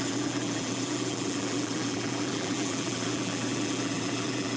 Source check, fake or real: fake